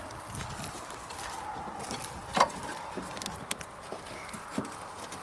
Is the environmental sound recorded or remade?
recorded